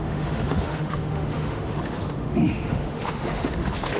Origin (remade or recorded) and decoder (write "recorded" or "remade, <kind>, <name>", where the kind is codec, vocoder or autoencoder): remade, autoencoder, DAC-VAE